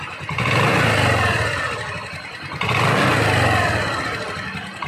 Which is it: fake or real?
real